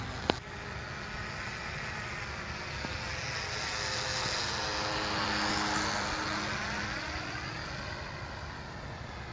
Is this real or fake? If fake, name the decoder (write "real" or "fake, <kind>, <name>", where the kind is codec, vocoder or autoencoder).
real